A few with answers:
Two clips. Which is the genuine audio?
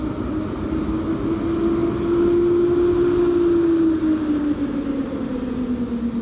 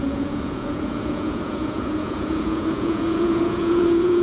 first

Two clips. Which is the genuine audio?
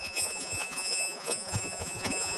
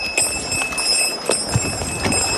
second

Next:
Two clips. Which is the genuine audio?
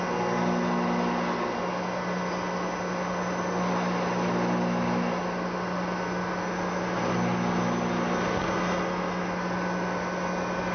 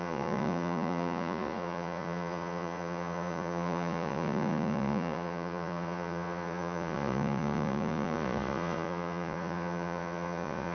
first